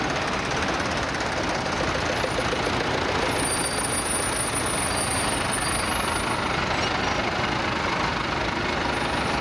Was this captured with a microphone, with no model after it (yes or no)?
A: yes